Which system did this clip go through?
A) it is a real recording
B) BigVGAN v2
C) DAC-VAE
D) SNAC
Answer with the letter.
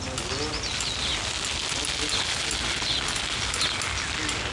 A